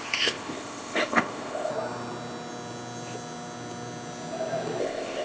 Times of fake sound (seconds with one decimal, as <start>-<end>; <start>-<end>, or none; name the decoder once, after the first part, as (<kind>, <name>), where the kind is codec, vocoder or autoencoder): 0.0-1.7 (codec, ZipCodec); 4.8-5.2